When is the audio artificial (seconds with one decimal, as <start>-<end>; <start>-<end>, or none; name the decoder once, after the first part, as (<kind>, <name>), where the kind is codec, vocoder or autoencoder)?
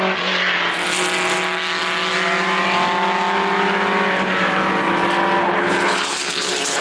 5.4-6.8 (codec, HILCodec)